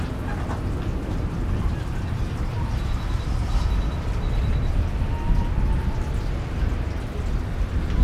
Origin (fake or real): real